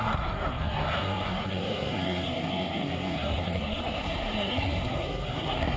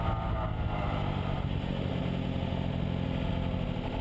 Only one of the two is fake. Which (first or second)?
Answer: first